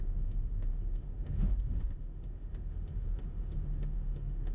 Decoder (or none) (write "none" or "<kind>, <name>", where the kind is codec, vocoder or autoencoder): autoencoder, DAC-VAE